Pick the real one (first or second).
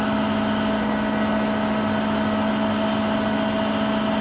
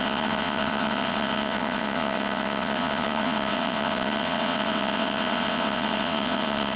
first